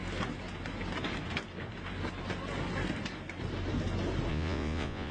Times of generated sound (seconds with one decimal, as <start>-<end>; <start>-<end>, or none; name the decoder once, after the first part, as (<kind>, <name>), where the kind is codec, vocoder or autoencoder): 4.3-5.1 (vocoder, Vocos)